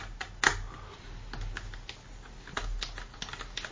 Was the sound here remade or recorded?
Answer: recorded